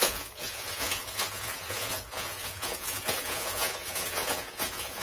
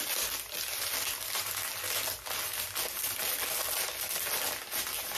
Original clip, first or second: second